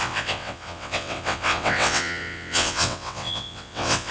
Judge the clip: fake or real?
fake